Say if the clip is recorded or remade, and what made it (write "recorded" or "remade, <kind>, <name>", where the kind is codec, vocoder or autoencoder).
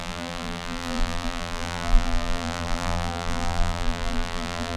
remade, vocoder, BigVGAN v2